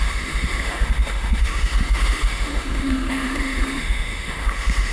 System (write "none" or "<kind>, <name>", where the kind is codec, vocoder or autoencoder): autoencoder, DAC-VAE